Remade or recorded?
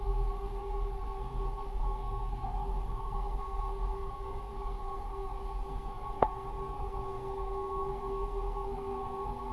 remade